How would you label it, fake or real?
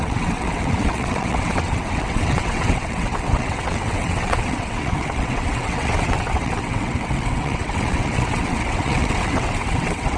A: fake